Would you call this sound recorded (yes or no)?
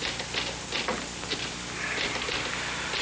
yes